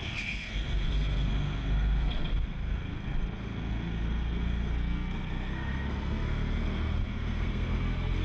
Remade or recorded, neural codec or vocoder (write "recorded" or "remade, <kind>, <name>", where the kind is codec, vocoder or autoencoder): remade, codec, SNAC